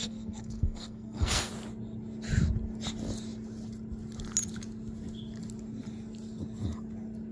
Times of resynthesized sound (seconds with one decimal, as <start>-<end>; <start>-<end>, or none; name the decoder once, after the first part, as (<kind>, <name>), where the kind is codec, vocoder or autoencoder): 0.0-1.5 (codec, SNAC)